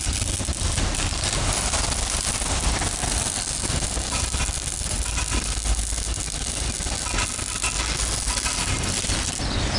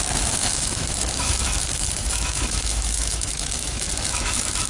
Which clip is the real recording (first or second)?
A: first